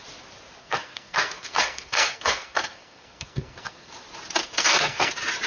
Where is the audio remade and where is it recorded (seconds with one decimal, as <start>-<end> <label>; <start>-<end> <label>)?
0.0-0.6 recorded; 0.6-3.9 remade; 3.9-4.4 recorded; 4.4-5.1 remade; 5.1-5.5 recorded